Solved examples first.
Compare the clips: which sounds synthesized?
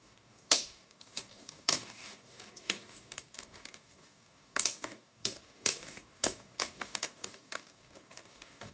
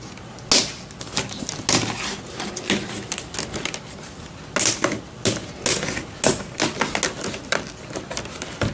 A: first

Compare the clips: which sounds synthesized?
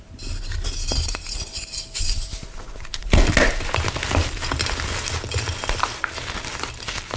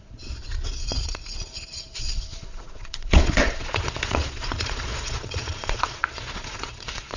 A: second